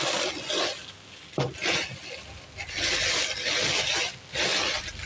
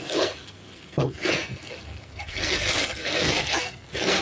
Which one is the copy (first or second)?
second